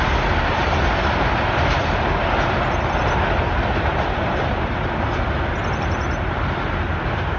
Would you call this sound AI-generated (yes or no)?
no